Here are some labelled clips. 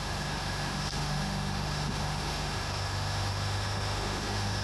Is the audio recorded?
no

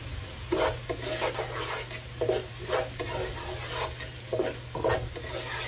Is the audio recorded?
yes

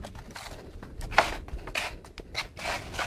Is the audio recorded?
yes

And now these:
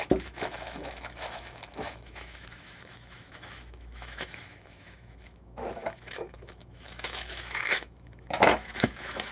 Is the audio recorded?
no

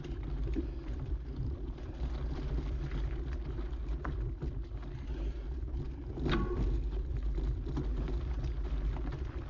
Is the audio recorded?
yes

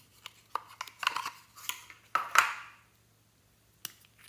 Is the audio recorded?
yes